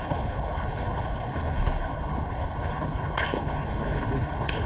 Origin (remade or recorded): remade